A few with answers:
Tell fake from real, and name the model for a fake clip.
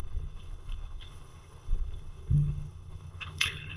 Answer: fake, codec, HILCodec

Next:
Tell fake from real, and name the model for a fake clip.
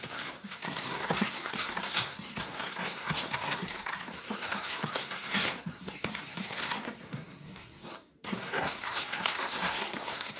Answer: fake, codec, SNAC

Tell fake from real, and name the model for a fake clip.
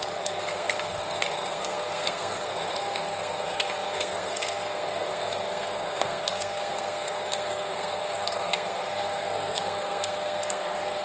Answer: fake, codec, SNAC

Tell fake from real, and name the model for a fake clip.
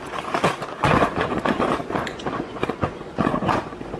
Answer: fake, vocoder, Vocos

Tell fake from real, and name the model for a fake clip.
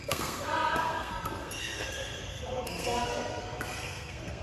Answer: fake, codec, SNAC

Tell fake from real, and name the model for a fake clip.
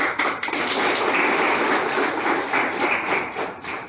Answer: real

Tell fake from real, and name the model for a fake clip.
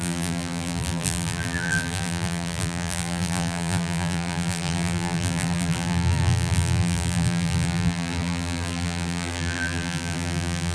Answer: fake, vocoder, BigVGAN v2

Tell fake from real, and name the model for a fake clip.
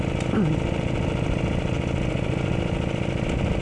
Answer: real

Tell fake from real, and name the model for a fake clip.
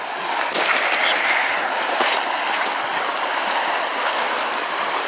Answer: real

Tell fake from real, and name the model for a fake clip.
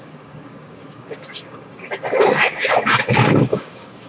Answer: fake, codec, DAC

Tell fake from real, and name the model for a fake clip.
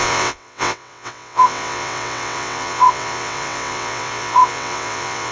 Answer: fake, vocoder, WaveNeXt